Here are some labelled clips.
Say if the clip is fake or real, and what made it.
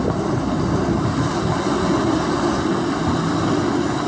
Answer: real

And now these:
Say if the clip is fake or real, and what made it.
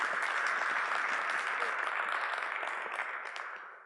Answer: real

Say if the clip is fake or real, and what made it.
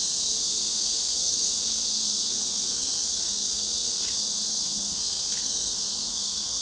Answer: fake, codec, SNAC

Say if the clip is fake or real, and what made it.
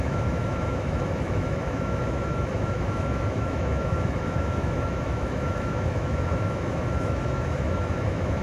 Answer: fake, autoencoder, DAC-VAE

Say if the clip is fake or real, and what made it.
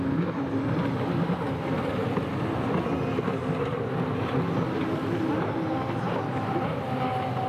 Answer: real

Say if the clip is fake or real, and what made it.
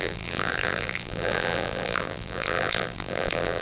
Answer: fake, vocoder, BigVGAN v2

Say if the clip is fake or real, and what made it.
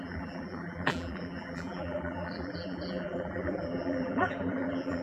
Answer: fake, vocoder, BigVGAN v2